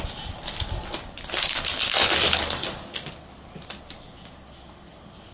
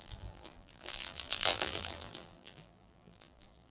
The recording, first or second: first